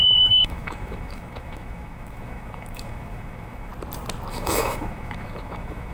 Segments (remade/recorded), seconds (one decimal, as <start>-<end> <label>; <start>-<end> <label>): 0.0-3.7 remade; 3.7-4.3 recorded; 4.3-5.9 remade